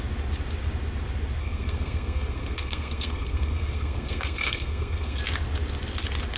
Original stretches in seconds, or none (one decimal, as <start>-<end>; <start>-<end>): 0.0-1.4; 5.2-6.4